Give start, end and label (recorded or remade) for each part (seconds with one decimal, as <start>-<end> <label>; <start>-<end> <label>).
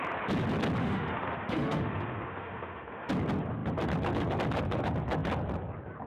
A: 0.0-0.8 recorded; 0.8-3.1 remade; 3.1-6.1 recorded